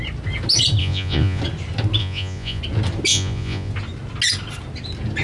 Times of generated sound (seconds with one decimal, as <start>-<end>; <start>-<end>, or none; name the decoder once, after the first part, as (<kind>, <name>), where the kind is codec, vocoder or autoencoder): 0.8-1.4 (vocoder, Vocos); 2.0-2.6; 3.1-3.7